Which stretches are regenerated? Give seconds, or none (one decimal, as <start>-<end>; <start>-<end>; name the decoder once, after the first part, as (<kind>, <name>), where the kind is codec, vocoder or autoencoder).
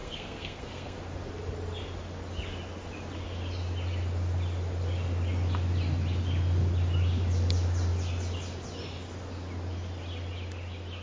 0.0-1.0 (codec, SNAC)